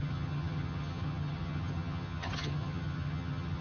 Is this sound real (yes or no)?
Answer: no